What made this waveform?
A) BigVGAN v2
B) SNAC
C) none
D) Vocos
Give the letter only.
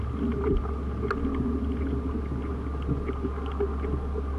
C